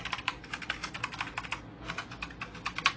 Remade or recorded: recorded